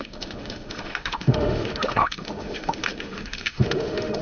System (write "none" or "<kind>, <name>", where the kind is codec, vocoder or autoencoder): autoencoder, DAC-VAE